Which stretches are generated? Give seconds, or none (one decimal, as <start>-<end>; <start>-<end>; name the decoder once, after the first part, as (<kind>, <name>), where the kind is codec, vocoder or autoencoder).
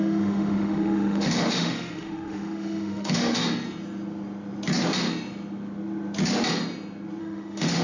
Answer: 0.0-3.4 (autoencoder, DAC-VAE); 7.2-7.8